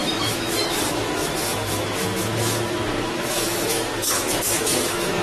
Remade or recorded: remade